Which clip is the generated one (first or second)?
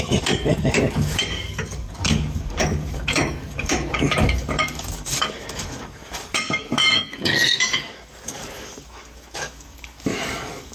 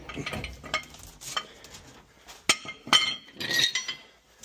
first